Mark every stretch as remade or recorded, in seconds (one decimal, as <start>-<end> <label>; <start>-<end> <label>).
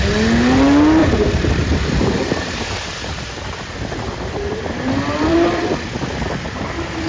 0.0-1.0 recorded; 1.0-5.3 remade; 5.3-7.1 recorded